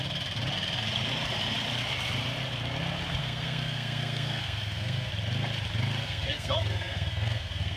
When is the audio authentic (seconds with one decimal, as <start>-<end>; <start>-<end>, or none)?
0.0-3.2; 5.1-6.0

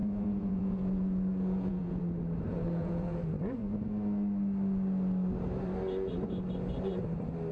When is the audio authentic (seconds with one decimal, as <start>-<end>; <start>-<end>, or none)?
2.0-2.5; 3.2-7.5

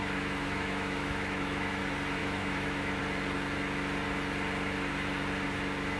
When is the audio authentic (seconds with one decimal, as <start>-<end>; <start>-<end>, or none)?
1.8-2.2; 3.0-6.0

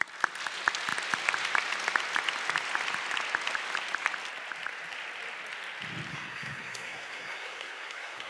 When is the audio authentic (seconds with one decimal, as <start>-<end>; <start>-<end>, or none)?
0.0-6.1

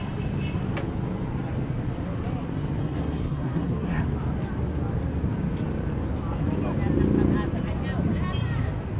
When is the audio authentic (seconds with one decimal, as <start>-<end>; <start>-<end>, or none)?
0.0-2.8; 4.0-9.0